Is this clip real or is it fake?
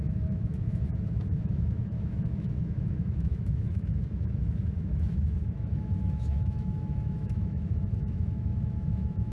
fake